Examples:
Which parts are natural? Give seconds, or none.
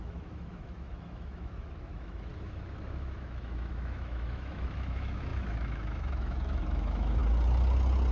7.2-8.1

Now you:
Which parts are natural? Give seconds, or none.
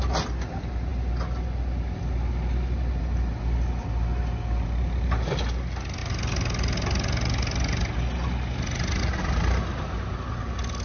0.0-10.8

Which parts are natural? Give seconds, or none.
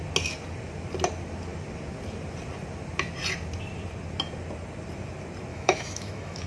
0.0-5.5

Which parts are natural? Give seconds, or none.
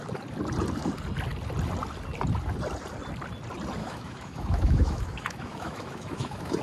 0.0-3.8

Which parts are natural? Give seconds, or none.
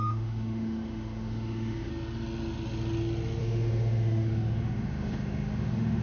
1.9-3.4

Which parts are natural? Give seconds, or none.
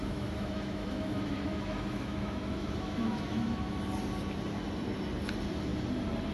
3.8-6.3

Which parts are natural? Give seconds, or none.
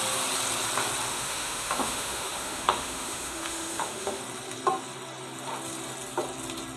0.0-1.1; 4.2-6.8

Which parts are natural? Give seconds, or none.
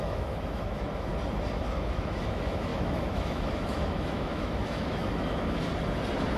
1.1-1.6; 5.7-6.4